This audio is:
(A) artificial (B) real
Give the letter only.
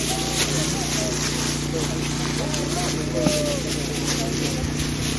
B